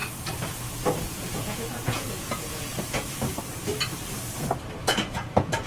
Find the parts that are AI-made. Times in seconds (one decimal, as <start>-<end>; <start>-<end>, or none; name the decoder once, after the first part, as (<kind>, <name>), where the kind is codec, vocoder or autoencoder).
1.0-2.7 (vocoder, Vocos); 4.8-5.7